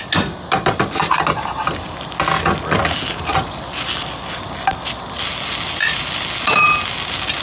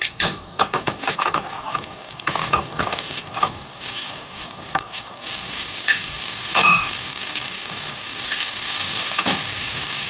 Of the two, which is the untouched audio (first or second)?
first